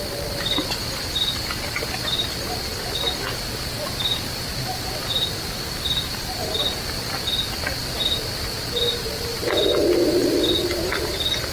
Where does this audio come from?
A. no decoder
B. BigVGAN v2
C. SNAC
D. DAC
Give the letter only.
A